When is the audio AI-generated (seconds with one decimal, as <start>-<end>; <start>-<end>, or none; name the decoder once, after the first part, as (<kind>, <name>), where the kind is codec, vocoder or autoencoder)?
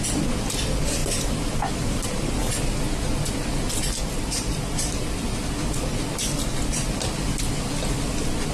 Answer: 1.0-2.5 (vocoder, BigVGAN v2)